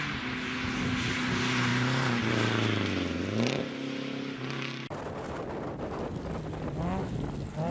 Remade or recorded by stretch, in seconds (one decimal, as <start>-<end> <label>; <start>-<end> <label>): 0.0-7.7 recorded